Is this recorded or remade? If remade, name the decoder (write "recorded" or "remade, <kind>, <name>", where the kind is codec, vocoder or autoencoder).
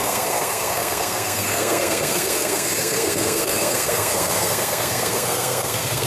remade, codec, SNAC